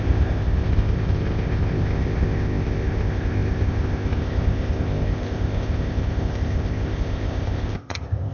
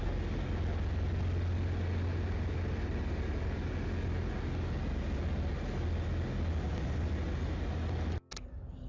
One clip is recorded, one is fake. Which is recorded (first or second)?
second